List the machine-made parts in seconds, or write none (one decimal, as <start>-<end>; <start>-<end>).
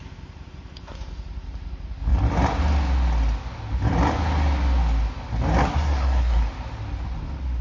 5.6-6.4